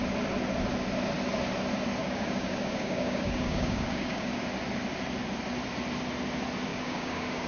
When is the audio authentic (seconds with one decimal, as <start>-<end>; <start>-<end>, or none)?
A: 0.0-2.0; 4.4-6.7